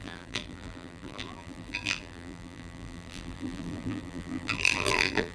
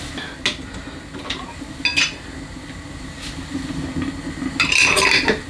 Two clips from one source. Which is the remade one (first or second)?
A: first